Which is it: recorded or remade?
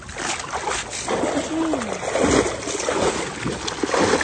recorded